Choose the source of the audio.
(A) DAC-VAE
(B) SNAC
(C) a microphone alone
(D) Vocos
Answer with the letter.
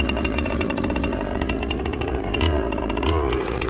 D